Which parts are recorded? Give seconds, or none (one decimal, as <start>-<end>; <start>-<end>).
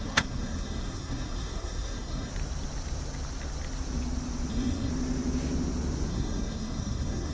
2.3-4.5; 4.9-6.1